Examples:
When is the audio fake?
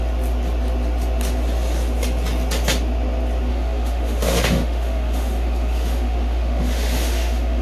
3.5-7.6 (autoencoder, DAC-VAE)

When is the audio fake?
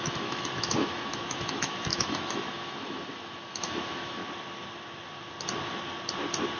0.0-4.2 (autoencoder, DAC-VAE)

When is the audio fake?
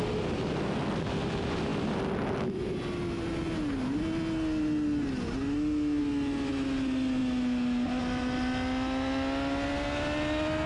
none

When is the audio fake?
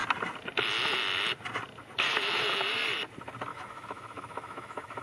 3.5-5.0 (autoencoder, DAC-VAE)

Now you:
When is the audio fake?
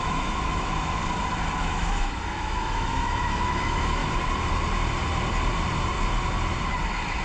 0.0-1.0 (autoencoder, DAC-VAE); 1.6-4.0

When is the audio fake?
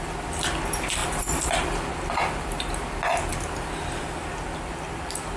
none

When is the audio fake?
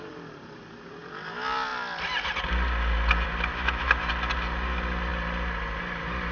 3.5-4.1 (autoencoder, DAC-VAE)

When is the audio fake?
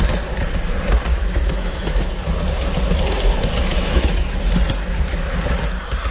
1.1-2.1 (autoencoder, DAC-VAE); 3.7-4.4